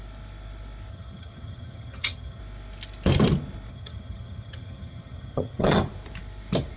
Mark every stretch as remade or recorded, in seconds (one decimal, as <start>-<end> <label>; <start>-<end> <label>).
0.0-0.9 recorded; 0.9-2.4 remade; 2.4-3.7 recorded; 3.7-5.9 remade; 5.9-6.8 recorded